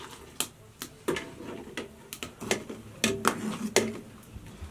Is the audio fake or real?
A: real